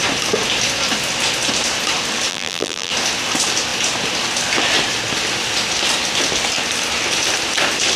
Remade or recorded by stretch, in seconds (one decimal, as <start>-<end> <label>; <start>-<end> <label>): 0.0-2.3 recorded; 2.3-2.9 remade; 2.9-8.0 recorded